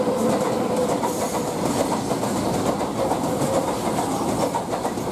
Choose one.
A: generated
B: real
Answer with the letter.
B